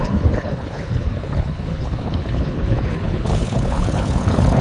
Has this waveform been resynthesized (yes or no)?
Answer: yes